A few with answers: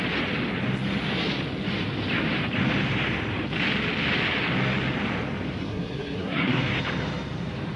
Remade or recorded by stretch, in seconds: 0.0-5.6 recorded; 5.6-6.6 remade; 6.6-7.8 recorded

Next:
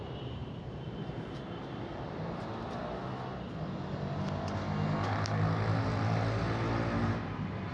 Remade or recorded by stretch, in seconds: 0.0-2.8 remade; 2.8-7.7 recorded

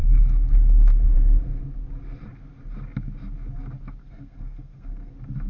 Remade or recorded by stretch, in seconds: 0.0-1.6 remade; 1.6-4.0 recorded; 4.0-5.1 remade; 5.1-5.5 recorded